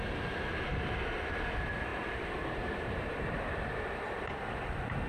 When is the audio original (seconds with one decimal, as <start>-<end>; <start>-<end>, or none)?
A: 0.0-1.9; 4.2-5.1